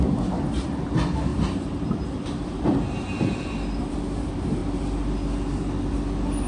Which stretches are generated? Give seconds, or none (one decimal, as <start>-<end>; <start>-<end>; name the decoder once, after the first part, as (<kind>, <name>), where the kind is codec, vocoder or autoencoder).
0.0-4.6 (vocoder, BigVGAN v2)